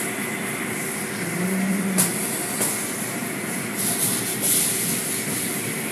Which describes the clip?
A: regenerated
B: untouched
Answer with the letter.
B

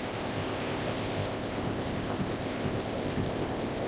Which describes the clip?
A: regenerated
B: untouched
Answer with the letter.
A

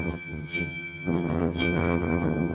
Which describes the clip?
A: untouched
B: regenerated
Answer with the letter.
B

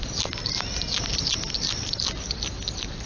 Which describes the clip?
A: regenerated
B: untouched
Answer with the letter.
B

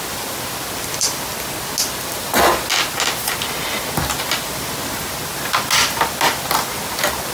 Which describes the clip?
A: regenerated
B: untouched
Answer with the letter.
B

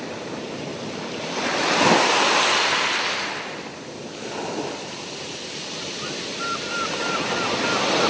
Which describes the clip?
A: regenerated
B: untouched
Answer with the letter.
B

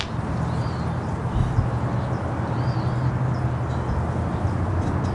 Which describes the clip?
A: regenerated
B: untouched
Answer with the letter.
B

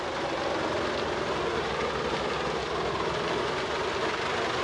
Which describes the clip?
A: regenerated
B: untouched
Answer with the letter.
B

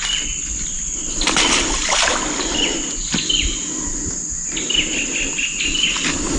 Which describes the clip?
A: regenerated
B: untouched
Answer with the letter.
B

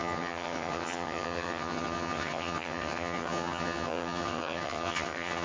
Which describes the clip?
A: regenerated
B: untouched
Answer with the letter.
A